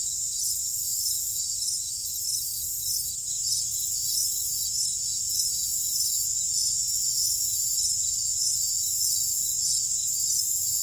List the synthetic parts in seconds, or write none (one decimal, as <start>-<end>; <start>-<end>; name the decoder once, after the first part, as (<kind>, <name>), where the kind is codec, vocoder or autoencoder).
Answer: 0.0-2.1 (vocoder, Vocos); 3.4-4.2; 5.1-10.8